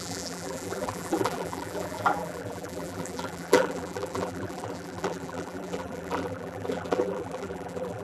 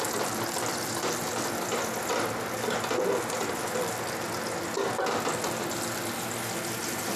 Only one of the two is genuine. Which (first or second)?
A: second